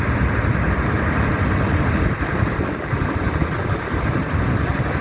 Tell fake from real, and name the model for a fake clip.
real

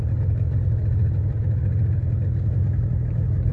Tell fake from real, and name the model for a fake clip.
real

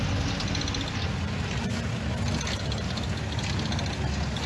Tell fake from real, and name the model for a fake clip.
real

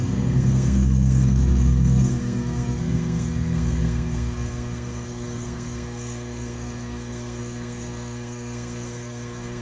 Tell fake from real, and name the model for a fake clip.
fake, codec, SNAC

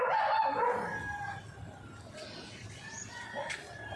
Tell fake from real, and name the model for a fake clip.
real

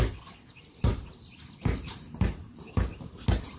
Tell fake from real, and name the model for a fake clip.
real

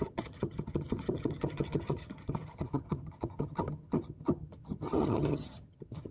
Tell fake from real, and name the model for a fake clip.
fake, vocoder, HiFi-GAN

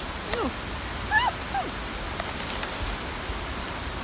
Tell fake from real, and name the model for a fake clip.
real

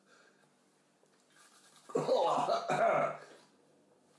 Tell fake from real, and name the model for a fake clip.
real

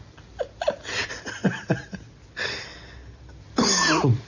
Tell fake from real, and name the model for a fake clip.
real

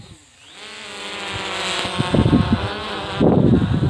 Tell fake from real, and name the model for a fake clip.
real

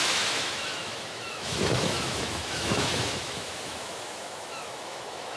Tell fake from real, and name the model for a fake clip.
fake, autoencoder, DAC-VAE